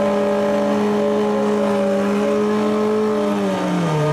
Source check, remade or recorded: recorded